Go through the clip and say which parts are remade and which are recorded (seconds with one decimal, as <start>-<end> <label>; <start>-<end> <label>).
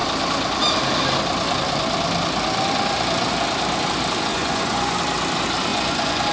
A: 0.0-4.3 recorded; 4.3-5.0 remade; 5.0-5.7 recorded; 5.7-6.3 remade